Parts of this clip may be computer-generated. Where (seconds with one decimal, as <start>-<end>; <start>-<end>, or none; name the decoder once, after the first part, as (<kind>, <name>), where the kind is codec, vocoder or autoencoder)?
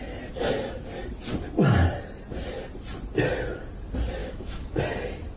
4.2-4.8 (autoencoder, DAC-VAE)